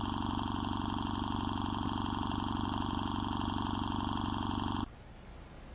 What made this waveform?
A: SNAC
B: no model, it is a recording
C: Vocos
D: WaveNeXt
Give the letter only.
B